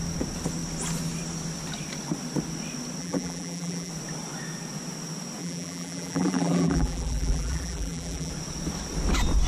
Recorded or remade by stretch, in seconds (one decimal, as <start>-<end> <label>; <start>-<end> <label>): 0.0-3.0 recorded; 3.0-3.9 remade; 3.9-5.4 recorded; 5.4-8.3 remade; 8.3-9.5 recorded